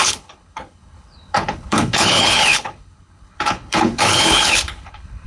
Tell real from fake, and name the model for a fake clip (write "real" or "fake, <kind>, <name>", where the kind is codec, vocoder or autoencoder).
fake, codec, HILCodec